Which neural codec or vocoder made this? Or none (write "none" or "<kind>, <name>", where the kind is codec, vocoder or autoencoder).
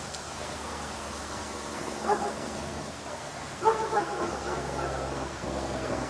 codec, SNAC